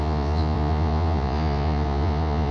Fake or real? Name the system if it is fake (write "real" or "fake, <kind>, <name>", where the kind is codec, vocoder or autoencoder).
fake, vocoder, Vocos